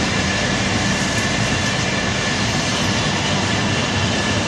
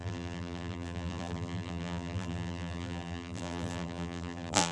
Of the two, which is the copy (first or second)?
second